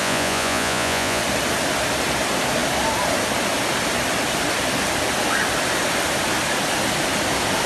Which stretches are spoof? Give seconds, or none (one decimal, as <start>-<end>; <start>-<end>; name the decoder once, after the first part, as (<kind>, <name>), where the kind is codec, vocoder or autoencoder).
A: 0.0-1.2 (vocoder, Vocos)